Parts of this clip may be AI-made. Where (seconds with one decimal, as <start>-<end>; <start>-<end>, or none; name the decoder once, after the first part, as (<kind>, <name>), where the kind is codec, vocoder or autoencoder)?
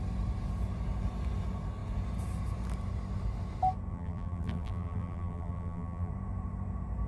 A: 3.9-6.1 (vocoder, BigVGAN v2)